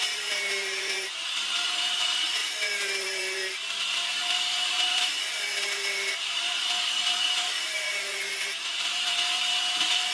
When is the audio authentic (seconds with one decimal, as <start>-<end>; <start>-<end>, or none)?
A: none